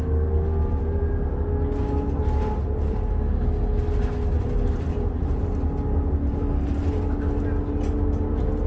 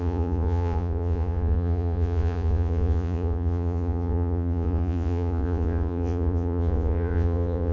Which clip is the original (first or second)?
first